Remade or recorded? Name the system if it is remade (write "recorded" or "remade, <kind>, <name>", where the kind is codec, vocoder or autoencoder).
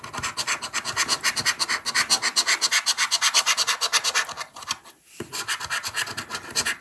recorded